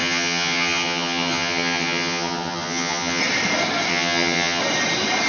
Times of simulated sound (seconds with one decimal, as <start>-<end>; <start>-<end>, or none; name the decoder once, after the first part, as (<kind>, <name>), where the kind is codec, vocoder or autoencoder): 0.0-3.2 (vocoder, HiFi-GAN); 3.9-4.6